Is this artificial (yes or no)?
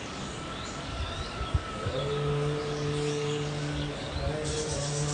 yes